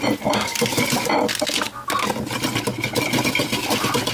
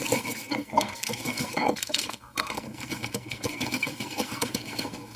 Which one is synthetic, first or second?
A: second